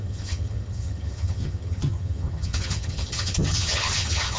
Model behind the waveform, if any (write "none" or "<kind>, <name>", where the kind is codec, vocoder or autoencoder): vocoder, HiFi-GAN